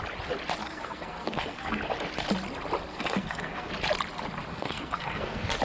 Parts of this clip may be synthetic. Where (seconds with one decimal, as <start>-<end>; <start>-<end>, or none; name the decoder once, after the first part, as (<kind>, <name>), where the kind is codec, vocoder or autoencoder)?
0.6-1.8 (codec, SNAC); 2.9-3.7; 4.5-5.6